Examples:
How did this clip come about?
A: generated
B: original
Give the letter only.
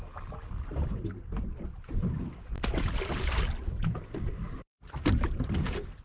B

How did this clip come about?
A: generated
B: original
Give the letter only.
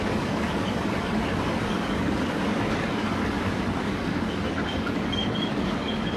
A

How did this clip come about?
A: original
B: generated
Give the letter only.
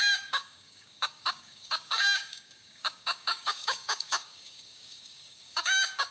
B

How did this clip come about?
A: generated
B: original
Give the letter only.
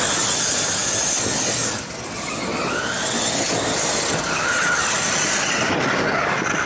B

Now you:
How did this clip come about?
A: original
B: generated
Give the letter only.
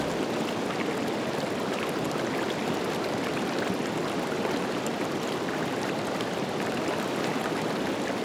A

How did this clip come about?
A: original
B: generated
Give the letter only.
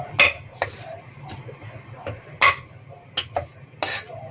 A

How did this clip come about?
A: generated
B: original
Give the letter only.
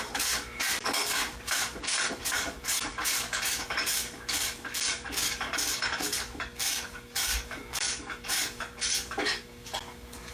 A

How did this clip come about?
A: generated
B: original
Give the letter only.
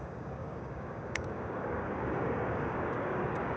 A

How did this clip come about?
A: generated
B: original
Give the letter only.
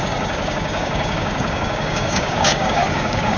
A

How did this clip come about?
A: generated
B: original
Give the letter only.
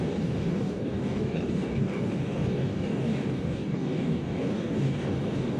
A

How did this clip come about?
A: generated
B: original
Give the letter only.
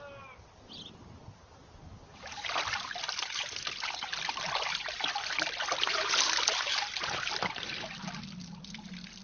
B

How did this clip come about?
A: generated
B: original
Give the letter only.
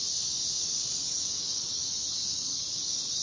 A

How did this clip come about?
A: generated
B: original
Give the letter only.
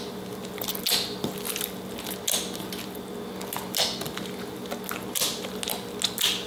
B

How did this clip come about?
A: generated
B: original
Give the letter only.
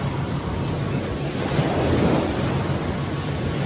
B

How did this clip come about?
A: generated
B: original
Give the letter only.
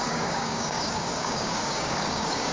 A